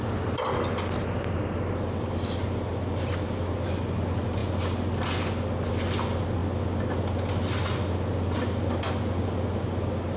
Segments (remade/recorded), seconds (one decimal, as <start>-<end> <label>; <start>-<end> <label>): 0.0-10.2 recorded